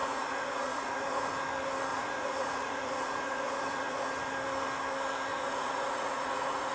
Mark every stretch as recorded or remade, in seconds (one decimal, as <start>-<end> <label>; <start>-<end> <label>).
0.0-1.3 remade; 1.3-1.9 recorded; 1.9-4.1 remade; 4.1-5.3 recorded; 5.3-6.7 remade